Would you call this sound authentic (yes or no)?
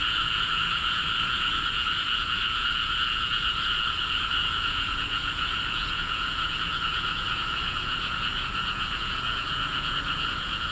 no